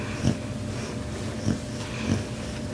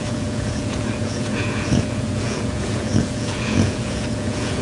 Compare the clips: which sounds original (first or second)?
first